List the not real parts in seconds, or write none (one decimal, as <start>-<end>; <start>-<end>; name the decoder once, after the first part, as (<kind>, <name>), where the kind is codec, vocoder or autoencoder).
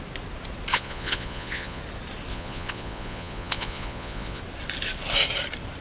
0.7-1.8 (vocoder, Vocos); 2.3-4.4